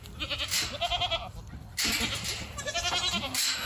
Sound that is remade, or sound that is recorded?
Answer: recorded